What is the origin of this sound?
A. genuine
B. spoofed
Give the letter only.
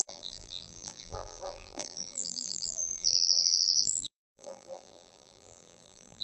B